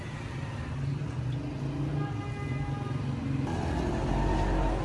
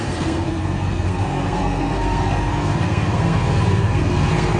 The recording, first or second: first